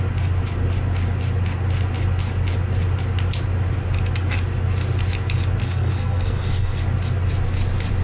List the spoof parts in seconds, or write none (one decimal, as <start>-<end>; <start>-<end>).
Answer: 5.6-6.8